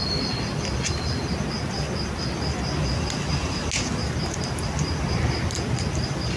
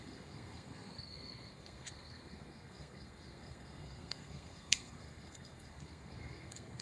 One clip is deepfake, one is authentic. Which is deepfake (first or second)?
second